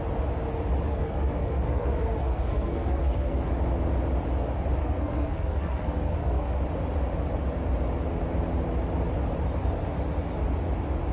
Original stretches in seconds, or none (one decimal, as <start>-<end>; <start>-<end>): 0.0-0.9; 3.5-4.8; 6.6-11.1